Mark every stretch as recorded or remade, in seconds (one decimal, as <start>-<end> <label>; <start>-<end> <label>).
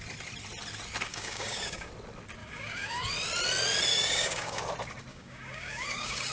0.0-1.1 recorded; 1.1-1.9 remade; 1.9-2.4 recorded; 2.4-3.1 remade; 3.1-3.9 recorded; 3.9-4.6 remade; 4.6-5.1 recorded; 5.1-6.3 remade